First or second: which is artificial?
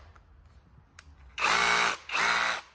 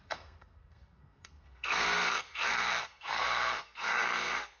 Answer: second